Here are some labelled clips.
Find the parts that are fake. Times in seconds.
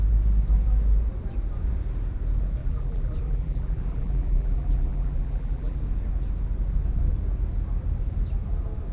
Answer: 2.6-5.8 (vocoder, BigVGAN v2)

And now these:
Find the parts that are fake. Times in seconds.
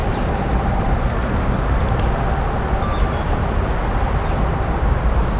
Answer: 0.0-2.1 (vocoder, BigVGAN v2); 2.9-5.4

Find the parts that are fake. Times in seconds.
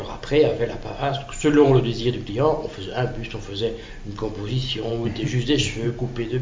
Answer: 0.5-1.8 (vocoder, BigVGAN v2)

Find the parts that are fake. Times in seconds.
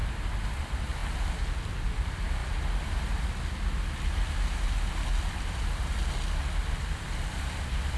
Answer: 0.6-1.0 (vocoder, BigVGAN v2); 1.7-2.4; 5.3-6.0; 6.9-8.0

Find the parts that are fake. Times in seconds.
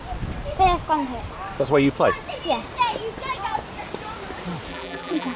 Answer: 4.7-5.4 (vocoder, BigVGAN v2)